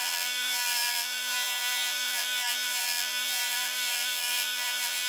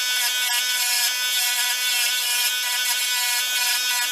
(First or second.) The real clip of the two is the second